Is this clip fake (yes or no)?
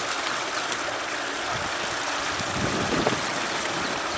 no